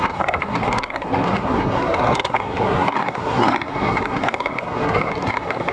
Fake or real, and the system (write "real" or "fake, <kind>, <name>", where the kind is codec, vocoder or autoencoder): fake, codec, SNAC